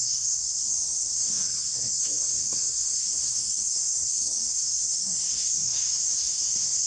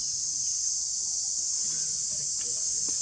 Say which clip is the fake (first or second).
first